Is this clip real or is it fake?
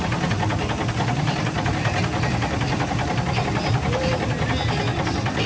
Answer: real